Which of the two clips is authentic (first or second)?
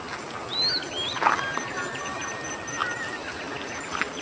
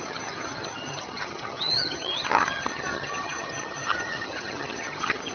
first